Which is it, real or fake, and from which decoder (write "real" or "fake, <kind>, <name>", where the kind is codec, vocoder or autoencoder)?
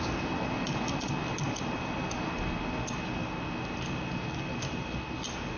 real